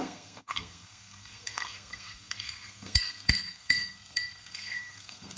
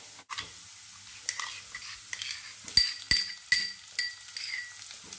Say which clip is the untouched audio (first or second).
second